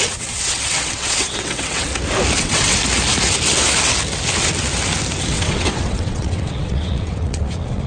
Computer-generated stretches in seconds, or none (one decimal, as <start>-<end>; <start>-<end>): 0.0-1.9; 2.4-2.8; 5.2-7.9